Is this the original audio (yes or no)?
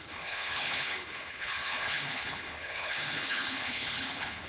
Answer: no